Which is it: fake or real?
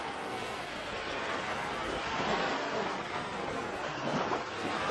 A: fake